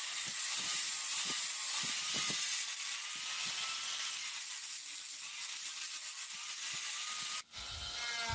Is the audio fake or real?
real